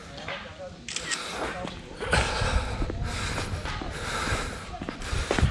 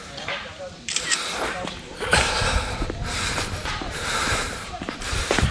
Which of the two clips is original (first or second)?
first